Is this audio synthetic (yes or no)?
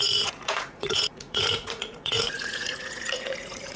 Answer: yes